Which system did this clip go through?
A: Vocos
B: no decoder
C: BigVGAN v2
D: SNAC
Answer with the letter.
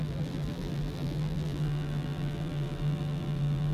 C